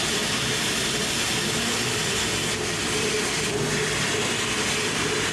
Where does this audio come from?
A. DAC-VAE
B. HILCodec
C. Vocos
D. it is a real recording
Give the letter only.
D